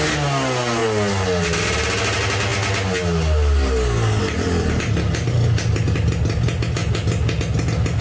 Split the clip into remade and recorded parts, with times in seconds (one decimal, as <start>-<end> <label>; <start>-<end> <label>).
0.0-8.0 recorded

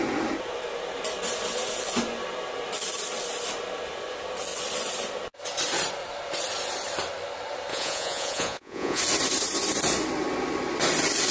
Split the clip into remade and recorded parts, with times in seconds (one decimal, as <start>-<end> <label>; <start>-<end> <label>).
0.0-7.7 recorded; 7.7-9.0 remade; 9.0-11.3 recorded

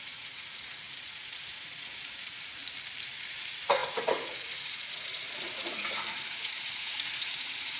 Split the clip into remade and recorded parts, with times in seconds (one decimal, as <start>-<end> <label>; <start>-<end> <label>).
0.0-2.6 remade; 2.6-3.1 recorded; 3.1-7.8 remade

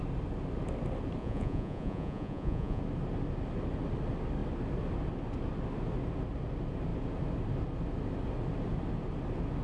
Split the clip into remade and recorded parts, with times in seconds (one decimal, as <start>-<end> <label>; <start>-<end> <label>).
0.0-1.2 recorded; 1.2-2.8 remade; 2.8-9.6 recorded

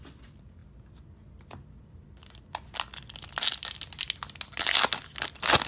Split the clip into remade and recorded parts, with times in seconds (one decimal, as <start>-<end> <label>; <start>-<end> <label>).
0.0-5.7 recorded

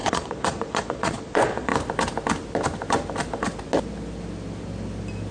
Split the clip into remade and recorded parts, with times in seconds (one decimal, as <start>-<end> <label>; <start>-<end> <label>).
0.0-1.7 remade; 1.7-5.3 recorded